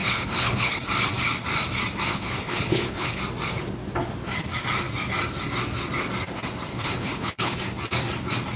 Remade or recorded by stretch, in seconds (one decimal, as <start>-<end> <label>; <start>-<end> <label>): 0.0-0.8 remade; 0.8-2.1 recorded; 2.1-3.2 remade; 3.2-6.7 recorded; 6.7-7.6 remade; 7.6-8.6 recorded